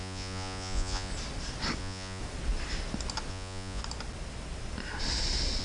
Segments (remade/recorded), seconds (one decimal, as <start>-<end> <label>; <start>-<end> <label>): 0.0-1.1 remade; 1.1-1.8 recorded; 1.8-2.2 remade; 2.2-3.3 recorded; 3.3-3.8 remade; 3.8-5.6 recorded